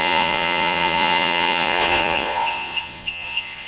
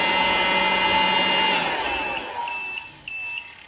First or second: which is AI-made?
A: first